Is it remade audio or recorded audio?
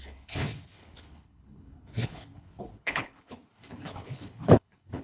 remade